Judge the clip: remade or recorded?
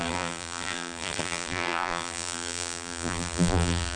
remade